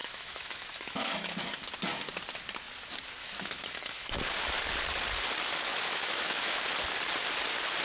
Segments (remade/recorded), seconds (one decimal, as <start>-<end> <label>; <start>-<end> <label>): 0.0-1.4 remade; 1.4-3.2 recorded; 3.2-4.2 remade; 4.2-5.7 recorded; 5.7-6.6 remade; 6.6-7.8 recorded